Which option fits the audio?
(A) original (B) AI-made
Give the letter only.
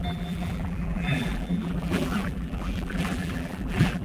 B